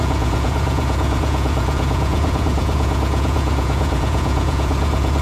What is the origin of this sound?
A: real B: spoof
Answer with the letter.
B